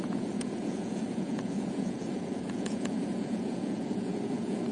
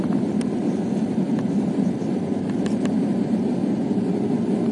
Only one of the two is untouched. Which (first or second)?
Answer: second